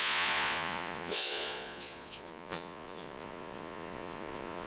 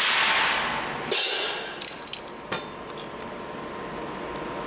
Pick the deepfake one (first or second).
first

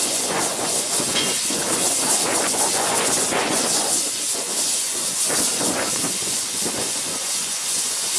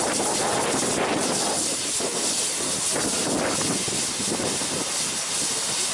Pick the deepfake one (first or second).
first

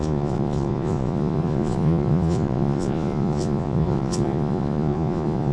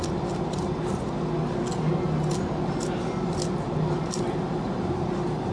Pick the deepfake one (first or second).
first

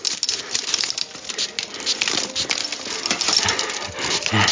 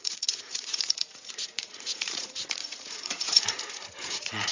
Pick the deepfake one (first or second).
second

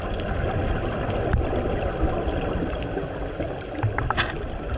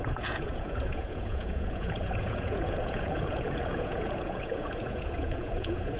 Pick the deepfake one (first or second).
second